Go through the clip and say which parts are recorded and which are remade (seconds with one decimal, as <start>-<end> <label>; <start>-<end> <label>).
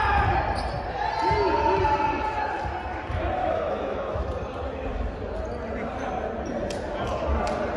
0.0-3.4 recorded; 3.4-4.2 remade; 4.2-7.8 recorded